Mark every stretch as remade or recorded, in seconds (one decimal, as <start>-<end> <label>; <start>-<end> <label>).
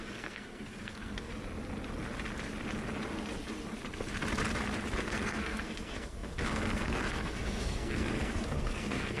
0.0-1.3 remade; 1.3-5.0 recorded; 5.0-9.2 remade